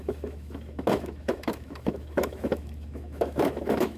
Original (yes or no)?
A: no